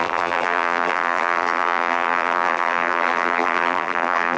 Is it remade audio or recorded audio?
remade